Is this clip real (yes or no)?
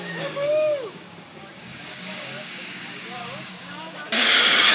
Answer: no